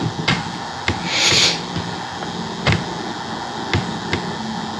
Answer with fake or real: real